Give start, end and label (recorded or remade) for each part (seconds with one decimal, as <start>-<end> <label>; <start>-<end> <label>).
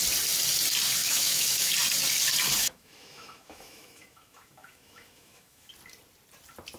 0.0-1.0 recorded; 1.0-1.7 remade; 1.7-2.6 recorded; 2.6-5.7 remade; 5.7-6.8 recorded